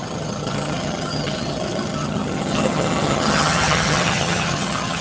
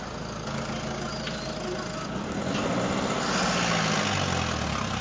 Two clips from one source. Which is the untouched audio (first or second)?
second